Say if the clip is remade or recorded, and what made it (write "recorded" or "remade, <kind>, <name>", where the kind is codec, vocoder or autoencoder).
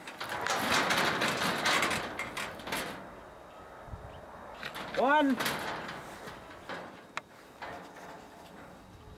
recorded